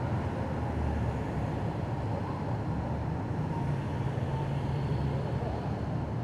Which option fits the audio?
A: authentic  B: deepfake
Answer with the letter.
A